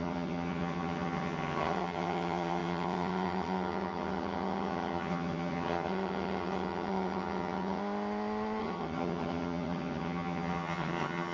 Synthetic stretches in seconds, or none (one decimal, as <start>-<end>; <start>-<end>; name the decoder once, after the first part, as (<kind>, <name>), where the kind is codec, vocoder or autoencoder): 0.0-7.8 (vocoder, HiFi-GAN); 8.6-11.3